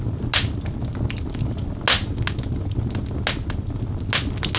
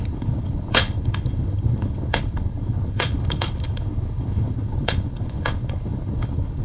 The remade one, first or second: second